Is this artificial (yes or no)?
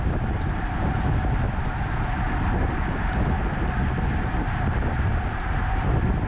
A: no